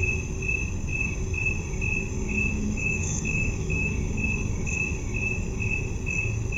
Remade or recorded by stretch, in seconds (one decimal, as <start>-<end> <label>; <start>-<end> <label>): 0.0-2.5 recorded; 2.5-3.9 remade; 3.9-6.6 recorded